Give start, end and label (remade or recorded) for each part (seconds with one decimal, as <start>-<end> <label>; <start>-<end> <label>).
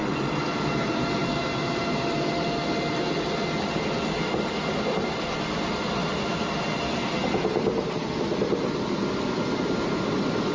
0.0-10.5 recorded